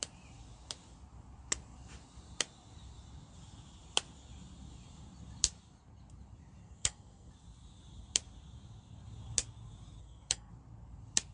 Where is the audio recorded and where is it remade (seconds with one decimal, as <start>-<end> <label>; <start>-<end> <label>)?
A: 0.0-6.6 recorded; 6.6-7.3 remade; 7.3-10.0 recorded; 10.0-10.5 remade; 10.5-11.3 recorded